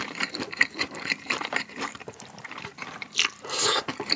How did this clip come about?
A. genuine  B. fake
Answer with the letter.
B